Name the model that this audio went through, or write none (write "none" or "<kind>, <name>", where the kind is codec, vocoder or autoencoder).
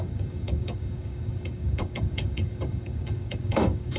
codec, DAC